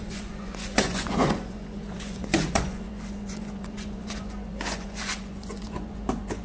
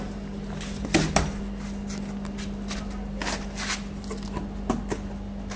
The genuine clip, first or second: second